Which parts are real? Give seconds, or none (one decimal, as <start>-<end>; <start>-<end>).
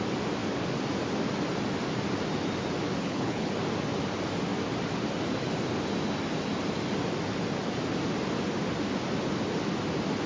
0.0-3.0; 3.5-10.3